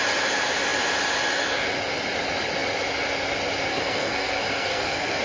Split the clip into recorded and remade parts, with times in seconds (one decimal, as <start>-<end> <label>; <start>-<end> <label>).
0.0-3.7 recorded; 3.7-5.2 remade